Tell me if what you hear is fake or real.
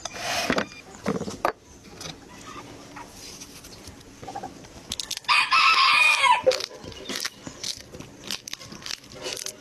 real